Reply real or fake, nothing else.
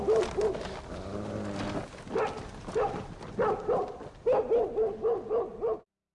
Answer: real